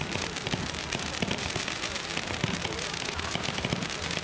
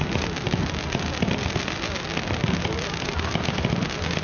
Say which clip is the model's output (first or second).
first